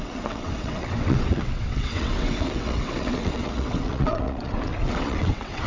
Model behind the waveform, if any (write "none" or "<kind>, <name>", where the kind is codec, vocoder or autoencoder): vocoder, WaveNeXt